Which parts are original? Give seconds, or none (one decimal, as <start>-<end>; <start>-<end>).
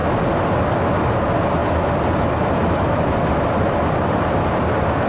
0.0-1.6; 4.3-5.1